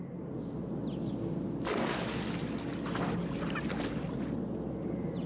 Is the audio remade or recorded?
recorded